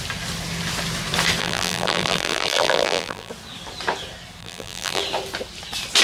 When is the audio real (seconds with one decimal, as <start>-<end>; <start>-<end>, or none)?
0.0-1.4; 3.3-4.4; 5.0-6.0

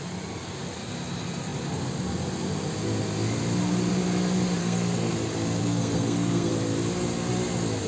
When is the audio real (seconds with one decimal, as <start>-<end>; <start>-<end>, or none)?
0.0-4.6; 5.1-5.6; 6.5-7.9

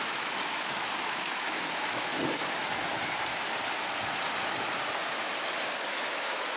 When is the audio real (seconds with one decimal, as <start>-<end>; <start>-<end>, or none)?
2.1-5.9